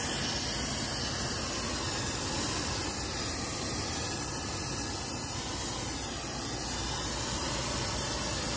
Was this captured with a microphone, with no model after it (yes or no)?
yes